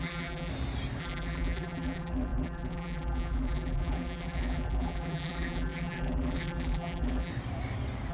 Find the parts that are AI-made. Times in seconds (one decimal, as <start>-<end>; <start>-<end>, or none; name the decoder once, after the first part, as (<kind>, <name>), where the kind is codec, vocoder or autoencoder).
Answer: 0.0-0.5 (vocoder, BigVGAN v2); 1.0-7.3